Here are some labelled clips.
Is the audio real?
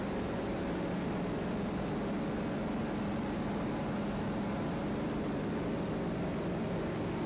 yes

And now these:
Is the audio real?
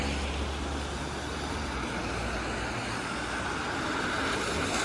yes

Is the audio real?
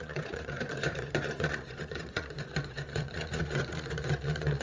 no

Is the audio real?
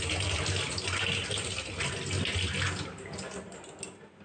yes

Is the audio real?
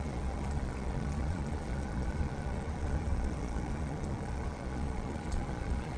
no